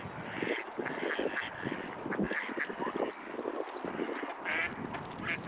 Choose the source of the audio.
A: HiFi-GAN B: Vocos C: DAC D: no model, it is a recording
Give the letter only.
D